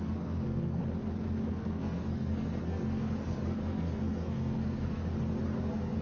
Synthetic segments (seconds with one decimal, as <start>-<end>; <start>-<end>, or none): 0.0-0.8; 1.5-5.0; 5.6-6.0